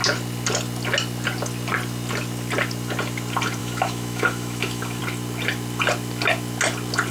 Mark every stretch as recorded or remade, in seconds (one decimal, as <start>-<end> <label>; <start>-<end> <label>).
0.0-3.6 recorded; 3.6-5.0 remade; 5.0-7.1 recorded